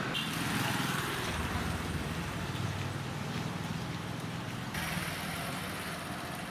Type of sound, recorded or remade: recorded